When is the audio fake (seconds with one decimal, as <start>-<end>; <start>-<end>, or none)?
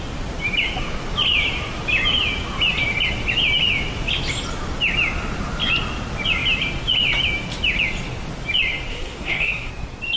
8.9-9.7